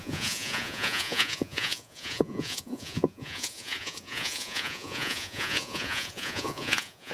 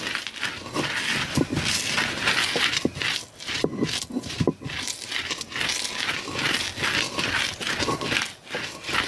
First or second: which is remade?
first